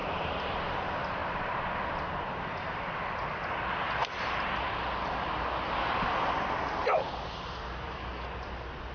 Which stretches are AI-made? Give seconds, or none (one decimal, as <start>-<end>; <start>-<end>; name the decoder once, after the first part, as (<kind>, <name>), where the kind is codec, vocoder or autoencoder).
0.0-0.6 (vocoder, BigVGAN v2); 1.2-3.6; 4.0-4.7; 6.8-8.1